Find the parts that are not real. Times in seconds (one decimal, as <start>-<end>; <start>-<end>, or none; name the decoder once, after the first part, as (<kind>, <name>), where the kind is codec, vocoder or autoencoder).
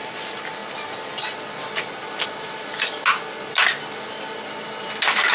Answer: none